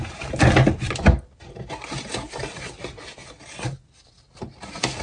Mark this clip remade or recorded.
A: recorded